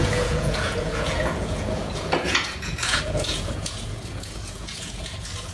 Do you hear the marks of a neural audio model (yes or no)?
yes